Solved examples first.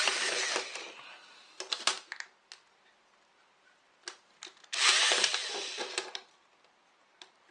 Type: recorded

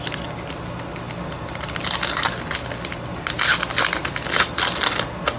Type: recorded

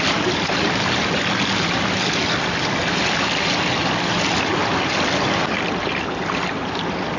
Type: recorded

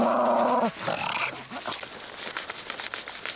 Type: recorded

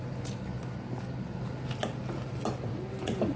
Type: recorded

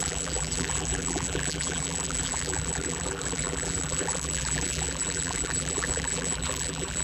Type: remade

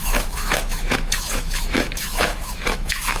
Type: remade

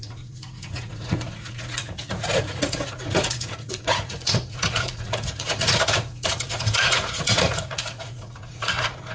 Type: remade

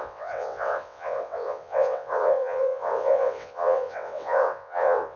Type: remade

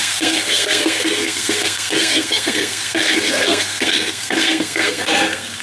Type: remade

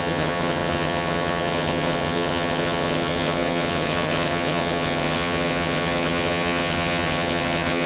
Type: remade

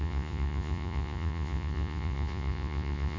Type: remade